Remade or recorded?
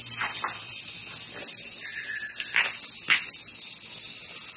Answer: recorded